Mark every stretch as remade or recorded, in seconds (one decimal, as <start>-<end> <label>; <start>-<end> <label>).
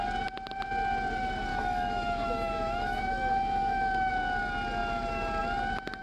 0.0-1.5 recorded; 1.5-4.1 remade; 4.1-6.0 recorded